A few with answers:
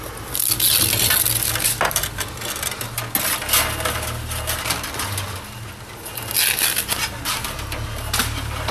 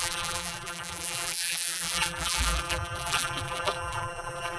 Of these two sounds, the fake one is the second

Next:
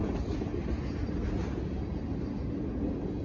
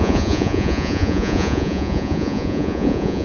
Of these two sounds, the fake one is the second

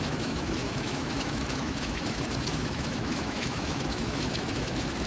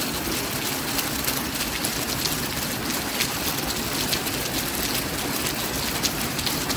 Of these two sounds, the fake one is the first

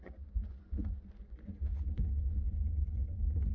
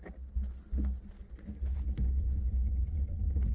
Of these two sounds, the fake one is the first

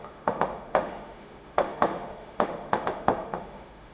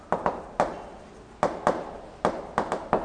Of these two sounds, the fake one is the first